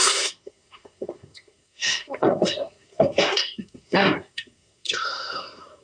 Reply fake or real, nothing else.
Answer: fake